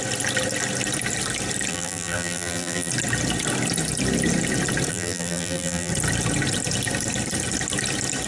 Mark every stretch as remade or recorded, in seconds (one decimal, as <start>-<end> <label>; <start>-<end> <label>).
0.0-1.7 recorded; 1.7-2.9 remade; 2.9-4.9 recorded; 4.9-5.9 remade; 5.9-8.3 recorded